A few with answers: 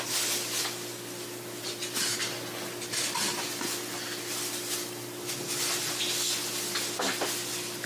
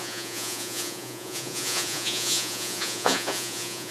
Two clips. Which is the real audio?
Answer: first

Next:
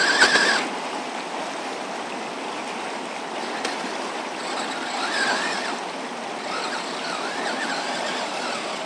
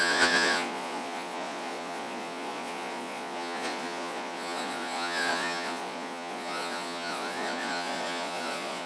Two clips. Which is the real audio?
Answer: first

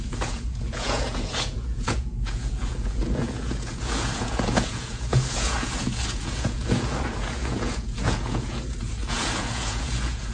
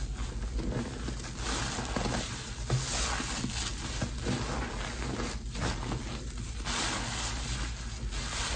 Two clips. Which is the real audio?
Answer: second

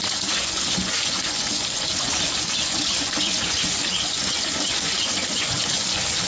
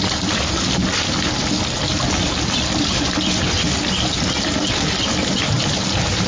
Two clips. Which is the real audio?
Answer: second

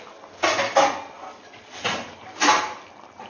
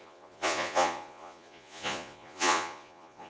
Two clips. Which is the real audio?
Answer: first